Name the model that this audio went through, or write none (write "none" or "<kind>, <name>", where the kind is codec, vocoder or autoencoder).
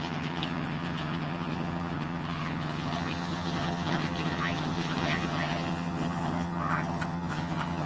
vocoder, HiFi-GAN